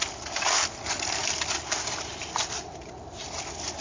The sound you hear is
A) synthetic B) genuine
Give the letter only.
B